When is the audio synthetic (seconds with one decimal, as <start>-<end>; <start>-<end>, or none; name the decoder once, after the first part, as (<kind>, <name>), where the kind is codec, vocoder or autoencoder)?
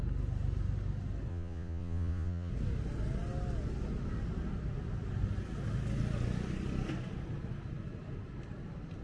1.3-2.5 (vocoder, Vocos)